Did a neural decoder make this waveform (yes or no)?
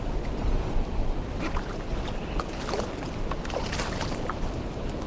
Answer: no